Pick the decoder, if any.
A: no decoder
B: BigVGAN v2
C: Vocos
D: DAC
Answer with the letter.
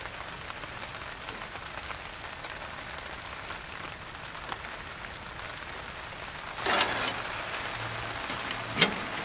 A